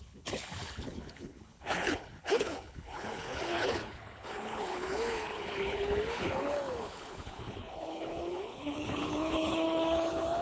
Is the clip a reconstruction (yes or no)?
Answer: yes